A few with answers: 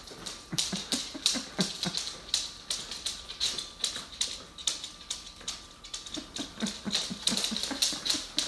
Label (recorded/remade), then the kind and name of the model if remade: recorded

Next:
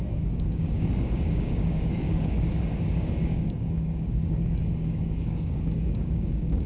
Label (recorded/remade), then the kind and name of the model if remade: remade, codec, DAC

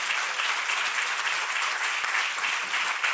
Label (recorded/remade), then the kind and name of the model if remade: recorded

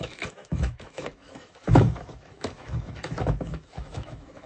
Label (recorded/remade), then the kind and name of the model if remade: remade, autoencoder, DAC-VAE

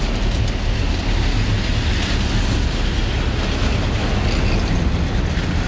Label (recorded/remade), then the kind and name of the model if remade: recorded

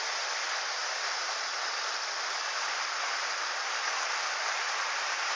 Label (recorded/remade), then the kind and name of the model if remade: recorded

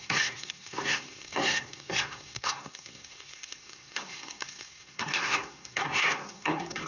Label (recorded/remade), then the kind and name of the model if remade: remade, codec, SNAC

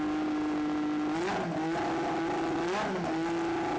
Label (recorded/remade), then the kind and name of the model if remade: recorded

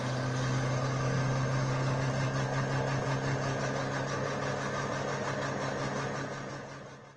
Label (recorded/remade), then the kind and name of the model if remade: recorded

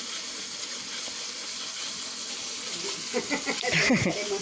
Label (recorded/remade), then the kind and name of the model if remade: recorded